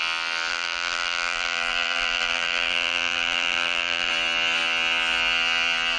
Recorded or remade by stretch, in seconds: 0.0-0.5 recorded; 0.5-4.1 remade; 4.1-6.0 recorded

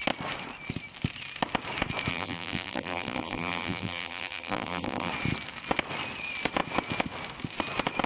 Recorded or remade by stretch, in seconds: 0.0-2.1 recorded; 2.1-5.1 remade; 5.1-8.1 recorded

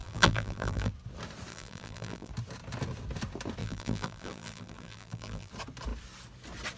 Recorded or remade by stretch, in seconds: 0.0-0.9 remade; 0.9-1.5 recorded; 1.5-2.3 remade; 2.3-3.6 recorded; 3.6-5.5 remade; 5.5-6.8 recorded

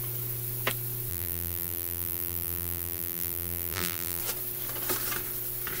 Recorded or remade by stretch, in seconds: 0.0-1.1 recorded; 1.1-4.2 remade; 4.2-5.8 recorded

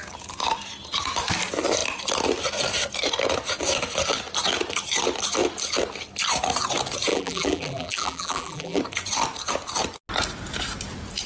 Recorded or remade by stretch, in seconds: 0.0-7.1 recorded; 7.1-8.8 remade; 8.8-11.3 recorded

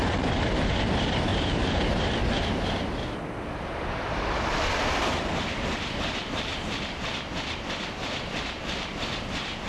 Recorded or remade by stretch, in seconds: 0.0-1.3 remade; 1.3-4.5 recorded; 4.5-6.5 remade; 6.5-7.1 recorded; 7.1-9.7 remade

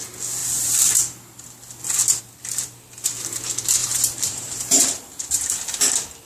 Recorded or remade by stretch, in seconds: 0.0-3.8 recorded; 3.8-5.5 remade; 5.5-6.3 recorded